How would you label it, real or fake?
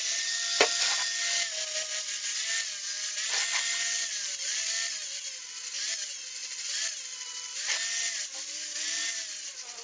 real